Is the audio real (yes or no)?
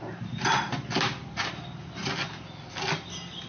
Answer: yes